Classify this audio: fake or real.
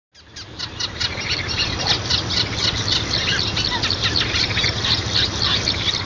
real